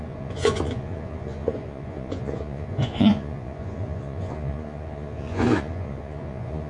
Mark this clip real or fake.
fake